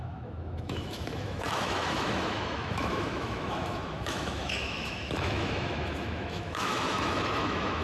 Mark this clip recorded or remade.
remade